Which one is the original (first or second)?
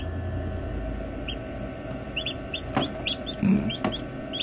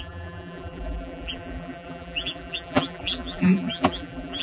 first